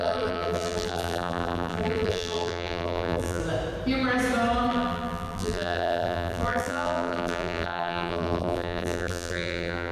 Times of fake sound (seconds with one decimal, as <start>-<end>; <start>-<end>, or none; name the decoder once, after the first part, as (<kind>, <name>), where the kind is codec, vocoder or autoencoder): 0.0-3.4 (vocoder, BigVGAN v2); 4.7-9.9